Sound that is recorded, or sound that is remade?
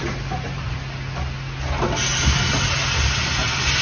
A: recorded